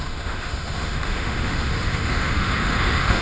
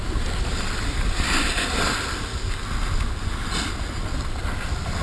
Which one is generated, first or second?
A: first